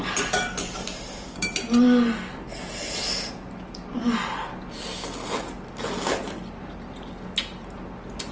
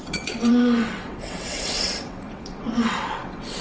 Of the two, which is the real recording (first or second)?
first